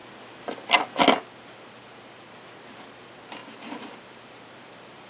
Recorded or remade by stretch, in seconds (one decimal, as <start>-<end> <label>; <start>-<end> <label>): 0.0-3.4 recorded; 3.4-5.1 remade